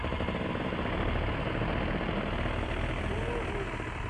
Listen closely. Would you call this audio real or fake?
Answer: real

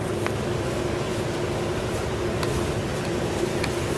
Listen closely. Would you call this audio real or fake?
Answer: real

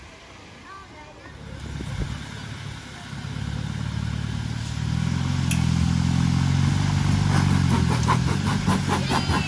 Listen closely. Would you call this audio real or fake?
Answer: real